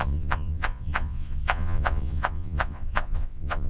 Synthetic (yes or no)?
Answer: yes